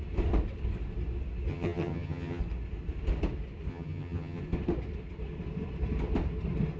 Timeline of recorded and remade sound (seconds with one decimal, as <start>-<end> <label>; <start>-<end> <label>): 0.0-1.5 recorded; 1.5-2.4 remade; 2.4-3.7 recorded; 3.7-4.4 remade; 4.4-6.8 recorded